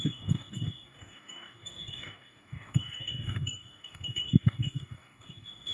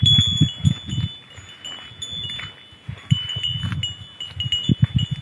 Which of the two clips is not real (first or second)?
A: first